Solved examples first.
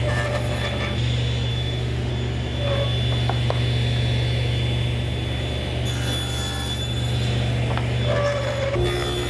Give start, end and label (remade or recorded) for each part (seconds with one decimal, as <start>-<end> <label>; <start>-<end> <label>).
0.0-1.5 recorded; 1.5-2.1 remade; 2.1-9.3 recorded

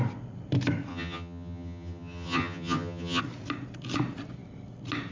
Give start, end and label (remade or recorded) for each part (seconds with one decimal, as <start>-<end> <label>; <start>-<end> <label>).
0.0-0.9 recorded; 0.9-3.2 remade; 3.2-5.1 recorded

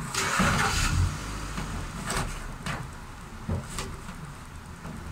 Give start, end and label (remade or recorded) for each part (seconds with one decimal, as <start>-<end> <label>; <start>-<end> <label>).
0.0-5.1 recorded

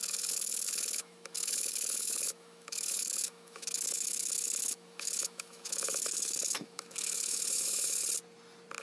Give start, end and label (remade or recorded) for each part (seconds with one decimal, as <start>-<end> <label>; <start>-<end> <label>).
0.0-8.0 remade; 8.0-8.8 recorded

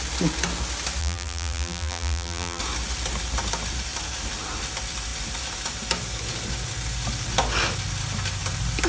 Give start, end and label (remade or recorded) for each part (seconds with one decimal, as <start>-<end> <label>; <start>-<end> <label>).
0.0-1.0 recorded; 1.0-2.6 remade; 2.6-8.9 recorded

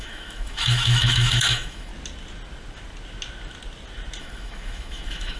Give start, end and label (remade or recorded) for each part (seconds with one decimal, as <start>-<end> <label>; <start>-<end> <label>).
0.0-1.9 remade; 1.9-4.2 recorded; 4.2-5.4 remade